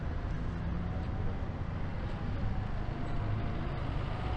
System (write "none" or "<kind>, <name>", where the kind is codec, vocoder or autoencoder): none